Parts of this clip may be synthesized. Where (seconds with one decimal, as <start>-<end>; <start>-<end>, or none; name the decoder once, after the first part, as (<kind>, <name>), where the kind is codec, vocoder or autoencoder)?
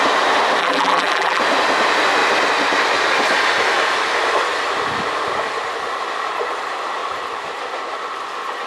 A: 0.6-1.4 (vocoder, BigVGAN v2)